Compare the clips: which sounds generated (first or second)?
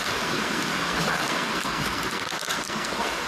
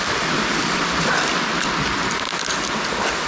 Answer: first